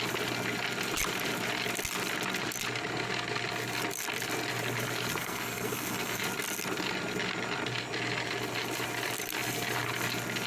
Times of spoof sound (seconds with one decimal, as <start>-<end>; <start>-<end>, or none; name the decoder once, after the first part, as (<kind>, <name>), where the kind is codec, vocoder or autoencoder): 5.2-6.2 (codec, SNAC)